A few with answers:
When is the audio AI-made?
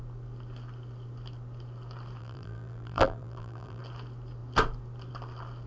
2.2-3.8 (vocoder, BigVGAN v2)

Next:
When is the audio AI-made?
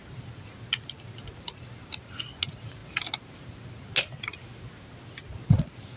none